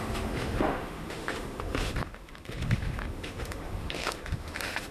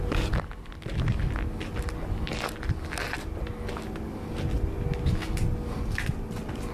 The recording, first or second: second